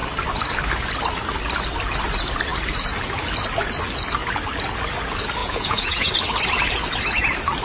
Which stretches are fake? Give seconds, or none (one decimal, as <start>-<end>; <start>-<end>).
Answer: 5.4-6.1